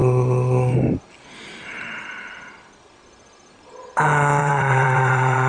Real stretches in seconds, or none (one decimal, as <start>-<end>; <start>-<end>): 0.0-4.4